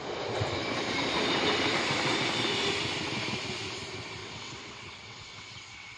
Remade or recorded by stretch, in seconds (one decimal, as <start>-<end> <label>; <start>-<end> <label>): 0.0-4.2 recorded; 4.2-6.0 remade